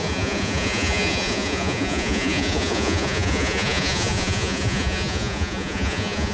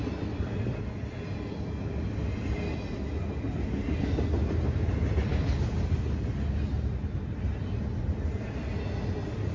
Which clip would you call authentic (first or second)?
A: second